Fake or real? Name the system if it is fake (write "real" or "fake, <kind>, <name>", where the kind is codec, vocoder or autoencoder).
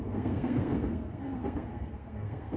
fake, codec, SNAC